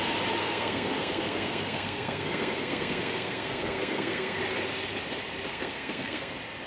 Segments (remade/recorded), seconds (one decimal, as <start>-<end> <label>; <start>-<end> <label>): 0.0-0.4 recorded; 0.4-4.4 remade; 4.4-5.5 recorded; 5.5-6.3 remade; 6.3-6.7 recorded